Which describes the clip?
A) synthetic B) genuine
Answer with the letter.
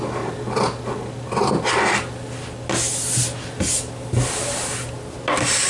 B